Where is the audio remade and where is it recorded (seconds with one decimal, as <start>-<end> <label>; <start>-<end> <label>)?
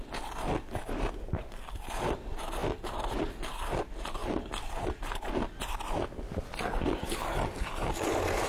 0.0-8.5 recorded